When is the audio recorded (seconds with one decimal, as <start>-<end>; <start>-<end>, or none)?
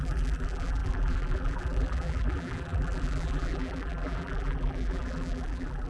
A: none